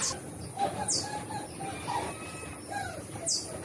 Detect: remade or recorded recorded